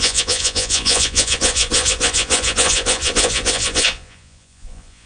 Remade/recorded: remade